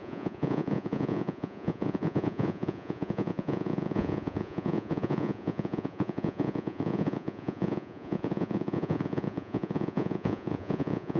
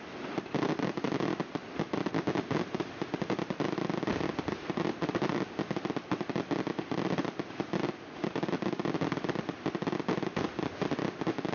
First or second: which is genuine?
second